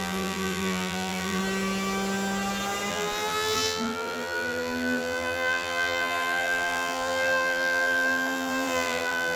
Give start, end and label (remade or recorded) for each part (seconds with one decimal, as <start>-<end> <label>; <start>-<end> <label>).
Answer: 0.0-1.4 remade; 1.4-2.9 recorded; 2.9-9.4 remade